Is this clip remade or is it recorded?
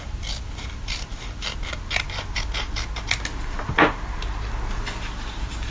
recorded